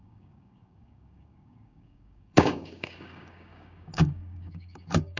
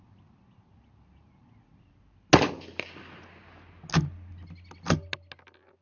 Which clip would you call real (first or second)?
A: second